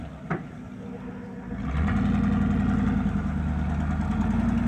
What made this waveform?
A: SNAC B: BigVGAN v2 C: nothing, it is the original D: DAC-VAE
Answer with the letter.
C